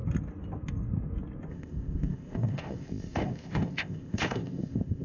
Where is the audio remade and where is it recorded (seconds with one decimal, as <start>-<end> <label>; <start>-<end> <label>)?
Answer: 0.0-1.5 recorded; 1.5-5.0 remade